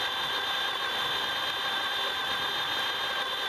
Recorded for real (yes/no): yes